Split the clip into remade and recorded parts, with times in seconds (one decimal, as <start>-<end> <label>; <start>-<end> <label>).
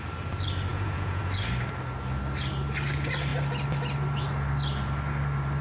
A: 0.0-0.7 recorded; 0.7-1.2 remade; 1.2-5.6 recorded